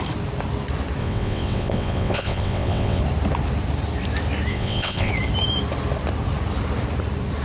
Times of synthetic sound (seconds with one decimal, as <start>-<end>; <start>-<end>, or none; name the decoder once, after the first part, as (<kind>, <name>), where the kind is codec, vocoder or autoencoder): 1.0-3.0 (vocoder, WaveNeXt); 4.5-5.1